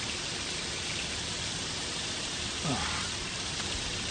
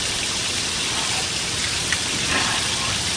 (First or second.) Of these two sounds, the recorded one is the second